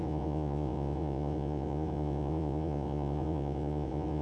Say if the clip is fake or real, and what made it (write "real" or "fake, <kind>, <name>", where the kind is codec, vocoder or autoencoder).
fake, vocoder, Vocos